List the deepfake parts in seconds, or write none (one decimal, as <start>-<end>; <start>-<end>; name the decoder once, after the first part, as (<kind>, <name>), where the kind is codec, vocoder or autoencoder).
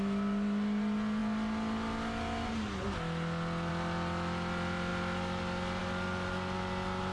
none